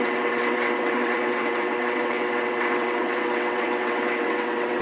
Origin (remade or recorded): remade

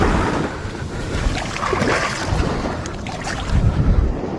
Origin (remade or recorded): recorded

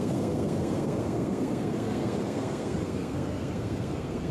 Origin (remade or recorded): remade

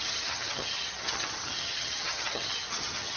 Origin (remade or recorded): remade